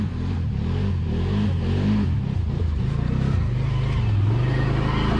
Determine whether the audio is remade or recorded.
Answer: recorded